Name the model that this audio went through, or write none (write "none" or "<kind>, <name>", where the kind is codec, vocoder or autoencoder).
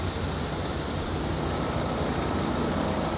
vocoder, BigVGAN v2